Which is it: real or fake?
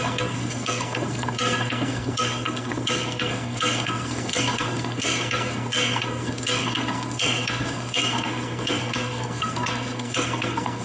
fake